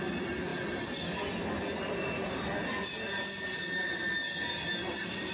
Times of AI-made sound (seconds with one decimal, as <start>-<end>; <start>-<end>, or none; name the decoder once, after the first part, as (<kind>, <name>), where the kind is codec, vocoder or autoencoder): none